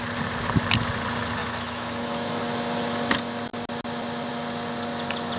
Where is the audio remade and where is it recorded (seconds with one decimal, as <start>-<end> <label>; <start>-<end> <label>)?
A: 0.0-1.4 recorded; 1.4-2.4 remade; 2.4-5.4 recorded